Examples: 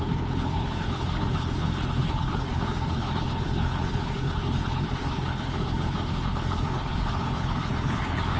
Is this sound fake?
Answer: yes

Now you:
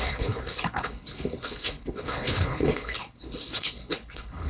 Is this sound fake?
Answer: yes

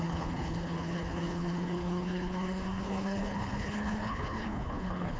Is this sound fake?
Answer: yes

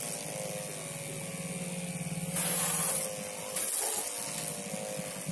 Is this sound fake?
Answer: no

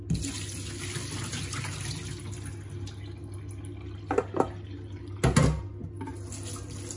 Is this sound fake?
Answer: no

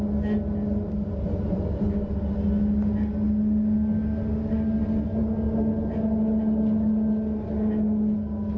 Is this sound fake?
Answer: no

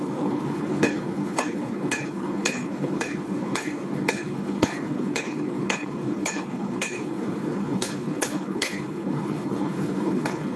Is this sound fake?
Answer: yes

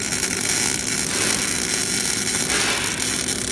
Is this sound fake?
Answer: no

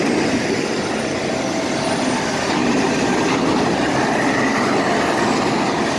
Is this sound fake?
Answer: no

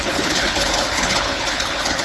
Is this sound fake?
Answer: yes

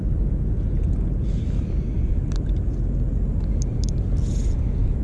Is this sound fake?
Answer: no